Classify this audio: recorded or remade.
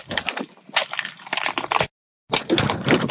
recorded